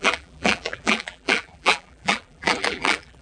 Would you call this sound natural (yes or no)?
no